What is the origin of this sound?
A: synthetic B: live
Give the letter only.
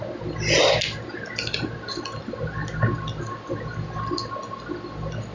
B